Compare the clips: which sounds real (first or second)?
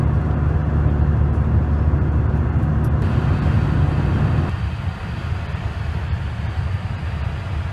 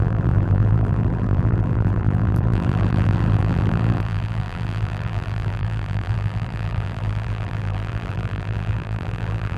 first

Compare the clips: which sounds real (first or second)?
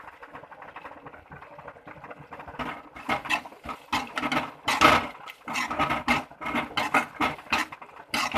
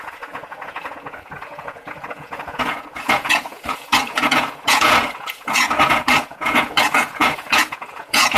first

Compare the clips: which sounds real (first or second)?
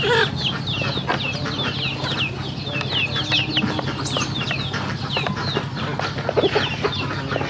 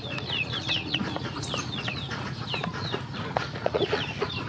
first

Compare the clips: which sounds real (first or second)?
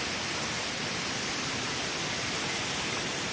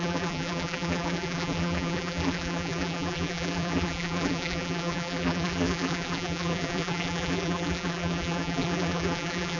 first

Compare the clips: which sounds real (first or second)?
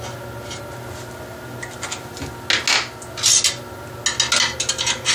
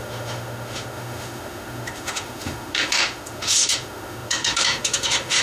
first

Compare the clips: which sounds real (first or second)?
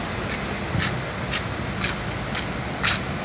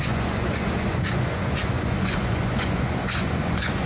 first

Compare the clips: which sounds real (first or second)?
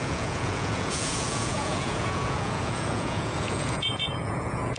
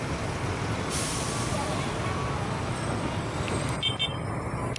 second